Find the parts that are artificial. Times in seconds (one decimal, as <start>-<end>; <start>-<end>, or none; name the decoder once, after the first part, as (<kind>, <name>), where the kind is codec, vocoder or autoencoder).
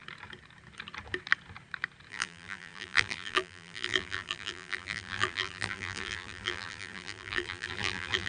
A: 2.1-8.3 (vocoder, BigVGAN v2)